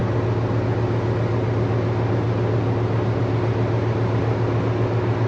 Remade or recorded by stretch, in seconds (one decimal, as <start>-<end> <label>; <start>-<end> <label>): 0.0-5.3 recorded